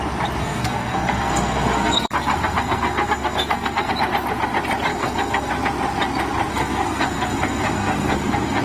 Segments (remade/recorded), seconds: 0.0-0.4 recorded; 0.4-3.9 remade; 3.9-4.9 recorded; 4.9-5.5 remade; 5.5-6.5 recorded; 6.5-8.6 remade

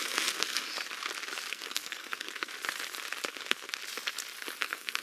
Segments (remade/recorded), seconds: 0.0-0.7 remade; 0.7-1.5 recorded; 1.5-2.5 remade; 2.5-3.3 recorded; 3.3-3.7 remade; 3.7-4.6 recorded; 4.6-5.0 remade

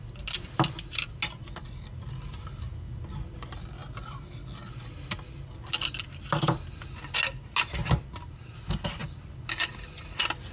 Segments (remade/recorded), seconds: 0.0-10.5 recorded